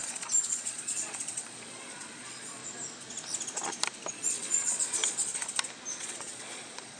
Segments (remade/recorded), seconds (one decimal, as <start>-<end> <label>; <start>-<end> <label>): 0.0-2.6 remade; 2.6-4.1 recorded; 4.1-5.3 remade; 5.3-5.9 recorded; 5.9-7.0 remade